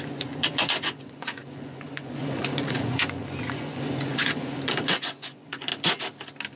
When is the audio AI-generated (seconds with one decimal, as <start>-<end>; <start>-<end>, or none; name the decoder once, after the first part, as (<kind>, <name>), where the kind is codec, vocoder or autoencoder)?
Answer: 0.0-5.7 (vocoder, Vocos)

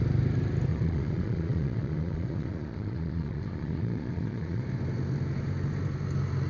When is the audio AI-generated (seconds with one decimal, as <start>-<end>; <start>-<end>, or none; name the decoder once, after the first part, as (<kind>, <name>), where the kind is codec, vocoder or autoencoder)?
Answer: 0.7-4.6 (vocoder, Vocos)

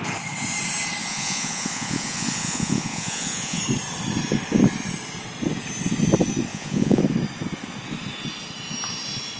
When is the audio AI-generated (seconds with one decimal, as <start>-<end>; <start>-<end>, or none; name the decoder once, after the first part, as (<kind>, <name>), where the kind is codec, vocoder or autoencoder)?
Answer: 1.0-3.6 (vocoder, Vocos); 6.5-7.0

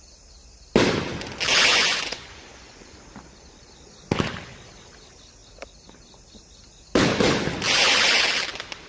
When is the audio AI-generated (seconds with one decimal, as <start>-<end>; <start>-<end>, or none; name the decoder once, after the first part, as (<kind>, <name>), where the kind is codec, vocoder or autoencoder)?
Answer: 1.7-3.0 (vocoder, Vocos)

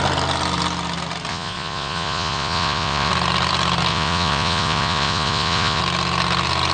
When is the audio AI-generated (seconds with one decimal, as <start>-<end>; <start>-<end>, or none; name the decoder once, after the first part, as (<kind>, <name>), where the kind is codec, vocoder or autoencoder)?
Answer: 1.3-3.1 (vocoder, Vocos); 3.9-5.8

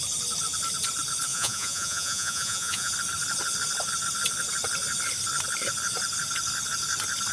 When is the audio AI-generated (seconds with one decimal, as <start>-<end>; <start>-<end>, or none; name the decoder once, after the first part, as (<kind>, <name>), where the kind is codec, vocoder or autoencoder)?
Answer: 1.3-2.9 (vocoder, Vocos)

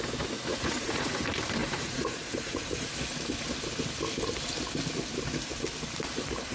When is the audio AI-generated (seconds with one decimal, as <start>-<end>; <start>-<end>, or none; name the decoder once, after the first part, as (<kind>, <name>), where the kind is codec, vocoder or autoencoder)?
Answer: 0.5-1.2 (vocoder, Vocos); 1.6-2.9